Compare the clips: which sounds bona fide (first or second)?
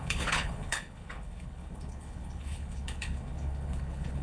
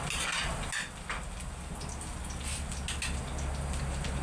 second